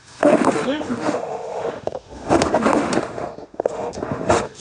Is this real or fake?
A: fake